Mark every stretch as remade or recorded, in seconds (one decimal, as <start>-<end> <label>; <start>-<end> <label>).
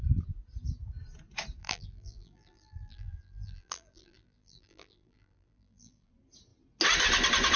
0.0-1.6 recorded; 1.6-6.1 remade; 6.1-7.6 recorded